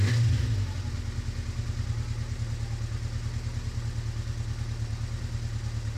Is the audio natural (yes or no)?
yes